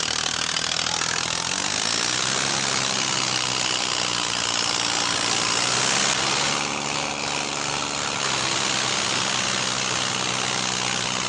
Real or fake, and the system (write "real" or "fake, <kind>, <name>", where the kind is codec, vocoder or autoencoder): real